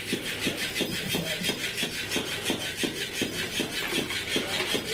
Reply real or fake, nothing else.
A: real